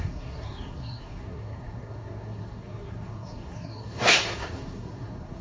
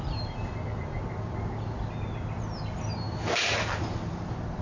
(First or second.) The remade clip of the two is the first